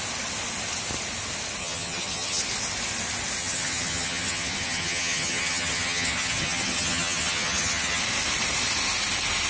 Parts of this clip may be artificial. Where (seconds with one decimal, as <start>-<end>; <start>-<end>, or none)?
1.6-2.4; 3.4-8.0